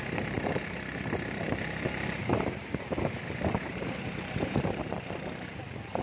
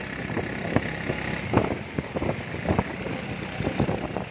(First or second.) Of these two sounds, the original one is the second